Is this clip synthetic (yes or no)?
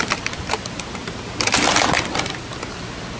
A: no